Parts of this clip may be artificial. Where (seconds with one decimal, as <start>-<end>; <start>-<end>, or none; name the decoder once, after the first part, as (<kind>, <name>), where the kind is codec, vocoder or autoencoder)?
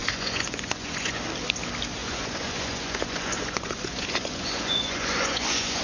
0.0-1.2 (vocoder, Vocos); 2.0-5.8